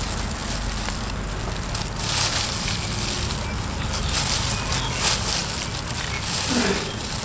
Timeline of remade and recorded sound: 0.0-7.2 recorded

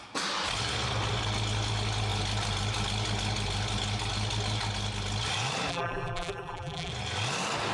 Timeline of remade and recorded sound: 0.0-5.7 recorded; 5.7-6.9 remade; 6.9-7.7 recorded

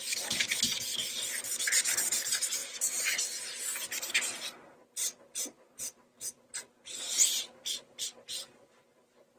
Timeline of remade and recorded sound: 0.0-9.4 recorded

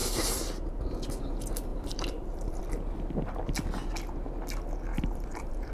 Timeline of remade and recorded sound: 0.0-1.7 recorded; 1.7-2.6 remade; 2.6-4.9 recorded; 4.9-5.7 remade

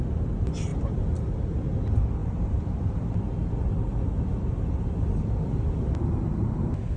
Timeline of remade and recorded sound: 0.0-0.7 recorded; 0.7-1.3 remade; 1.3-2.2 recorded; 2.2-6.2 remade; 6.2-7.0 recorded

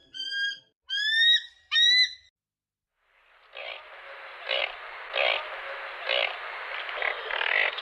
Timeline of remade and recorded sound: 0.0-1.1 recorded; 1.1-1.9 remade; 1.9-3.6 recorded; 3.6-4.6 remade; 4.6-7.8 recorded

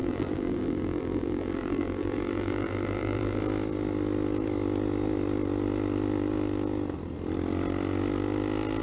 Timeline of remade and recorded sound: 0.0-3.4 remade; 3.4-8.8 recorded

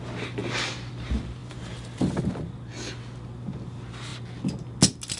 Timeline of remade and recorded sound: 0.0-1.4 recorded; 1.4-2.2 remade; 2.2-5.2 recorded